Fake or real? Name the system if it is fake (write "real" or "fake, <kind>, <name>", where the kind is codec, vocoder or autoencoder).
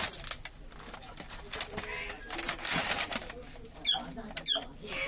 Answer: real